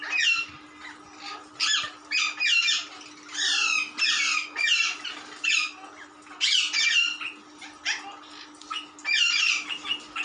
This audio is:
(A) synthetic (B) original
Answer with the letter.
B